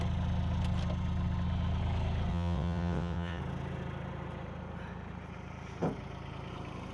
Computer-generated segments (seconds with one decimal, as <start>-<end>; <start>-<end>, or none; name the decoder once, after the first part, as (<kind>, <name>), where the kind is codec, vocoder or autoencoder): 2.3-3.4 (vocoder, WaveNeXt)